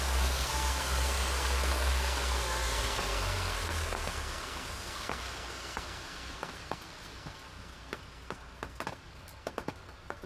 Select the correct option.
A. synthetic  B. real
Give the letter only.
A